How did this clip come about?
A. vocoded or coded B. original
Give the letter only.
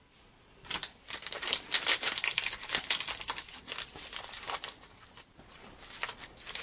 B